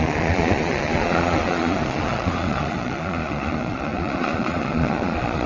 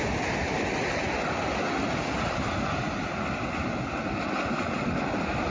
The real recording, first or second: second